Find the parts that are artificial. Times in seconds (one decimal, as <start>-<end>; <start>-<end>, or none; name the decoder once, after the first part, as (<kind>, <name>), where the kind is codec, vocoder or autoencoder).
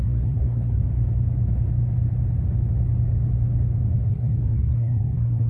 0.0-0.8 (codec, SNAC); 4.1-5.5